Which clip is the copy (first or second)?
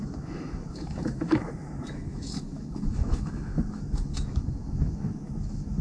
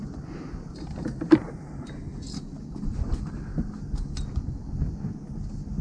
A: first